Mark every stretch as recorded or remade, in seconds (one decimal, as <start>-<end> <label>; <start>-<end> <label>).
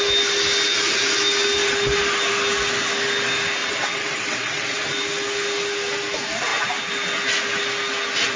0.0-3.6 recorded; 3.6-4.8 remade; 4.8-8.4 recorded